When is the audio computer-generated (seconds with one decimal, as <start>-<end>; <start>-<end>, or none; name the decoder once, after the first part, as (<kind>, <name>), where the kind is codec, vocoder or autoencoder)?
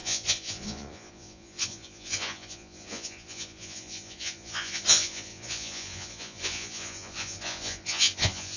0.0-8.6 (vocoder, Vocos)